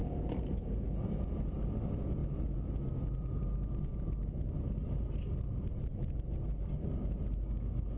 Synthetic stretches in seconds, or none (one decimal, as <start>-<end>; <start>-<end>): none